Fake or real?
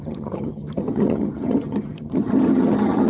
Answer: fake